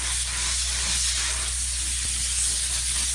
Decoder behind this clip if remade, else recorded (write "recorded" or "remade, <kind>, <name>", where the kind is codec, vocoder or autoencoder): recorded